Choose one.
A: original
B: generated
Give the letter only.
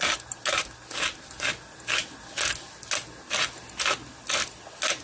A